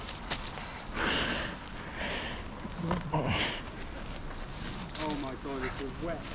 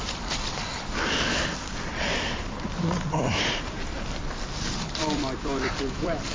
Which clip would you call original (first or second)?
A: first